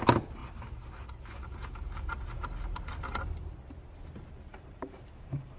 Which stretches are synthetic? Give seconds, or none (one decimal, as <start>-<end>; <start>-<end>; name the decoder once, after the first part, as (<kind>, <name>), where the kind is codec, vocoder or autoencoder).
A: 4.5-5.6 (vocoder, BigVGAN v2)